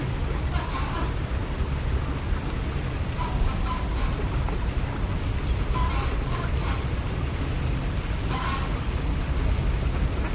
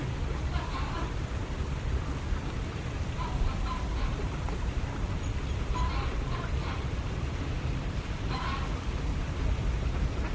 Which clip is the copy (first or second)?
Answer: second